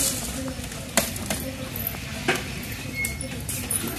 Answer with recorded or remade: recorded